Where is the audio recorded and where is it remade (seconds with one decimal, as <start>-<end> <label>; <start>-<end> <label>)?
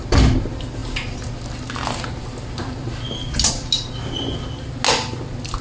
0.0-5.6 recorded